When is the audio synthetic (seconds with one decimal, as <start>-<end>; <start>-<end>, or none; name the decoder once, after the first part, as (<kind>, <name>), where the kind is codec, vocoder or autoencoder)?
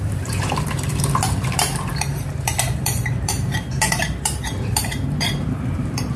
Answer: 0.0-6.2 (vocoder, BigVGAN v2)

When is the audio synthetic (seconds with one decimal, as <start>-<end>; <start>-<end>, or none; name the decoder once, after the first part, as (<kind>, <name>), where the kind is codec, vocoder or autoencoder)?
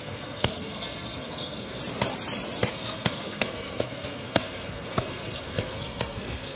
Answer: 0.0-1.8 (codec, SNAC); 2.7-6.6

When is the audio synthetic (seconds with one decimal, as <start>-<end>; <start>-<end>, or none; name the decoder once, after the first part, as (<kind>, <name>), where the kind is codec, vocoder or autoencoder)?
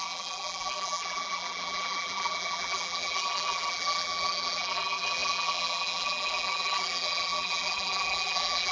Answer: 0.0-8.7 (vocoder, BigVGAN v2)